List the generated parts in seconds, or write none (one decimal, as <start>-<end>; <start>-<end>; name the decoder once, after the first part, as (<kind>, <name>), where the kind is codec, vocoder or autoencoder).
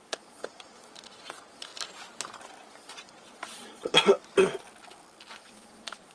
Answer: 0.0-1.7 (vocoder, Vocos); 2.7-4.1; 5.4-6.1